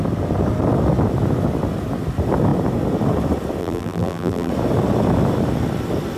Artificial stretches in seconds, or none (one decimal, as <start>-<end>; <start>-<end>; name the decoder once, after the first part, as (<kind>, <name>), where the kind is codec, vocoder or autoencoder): 3.6-4.5 (vocoder, BigVGAN v2)